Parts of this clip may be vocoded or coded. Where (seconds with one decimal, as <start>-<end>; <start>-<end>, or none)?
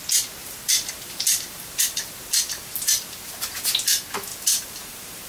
0.4-3.6; 4.3-5.3